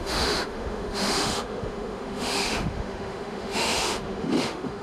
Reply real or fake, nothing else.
fake